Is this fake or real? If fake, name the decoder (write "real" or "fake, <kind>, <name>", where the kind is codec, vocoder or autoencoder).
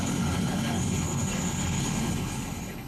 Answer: fake, codec, HILCodec